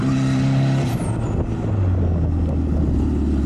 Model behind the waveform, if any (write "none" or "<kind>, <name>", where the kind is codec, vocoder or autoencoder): none